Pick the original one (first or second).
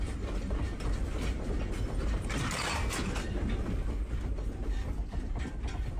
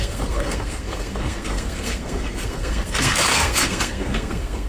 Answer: first